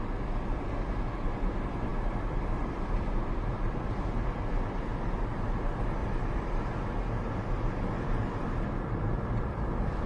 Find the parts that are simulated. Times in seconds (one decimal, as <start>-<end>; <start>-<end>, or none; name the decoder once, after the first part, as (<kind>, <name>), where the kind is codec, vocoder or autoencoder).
1.9-4.5 (vocoder, BigVGAN v2); 6.0-6.7; 8.2-10.1